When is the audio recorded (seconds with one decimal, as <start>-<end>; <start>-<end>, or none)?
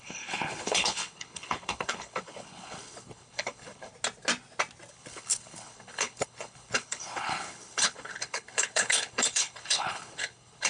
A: 3.9-4.9